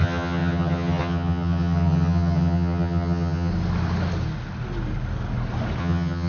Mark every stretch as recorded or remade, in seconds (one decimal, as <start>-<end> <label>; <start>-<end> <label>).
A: 0.0-3.5 remade; 3.5-5.8 recorded; 5.8-6.3 remade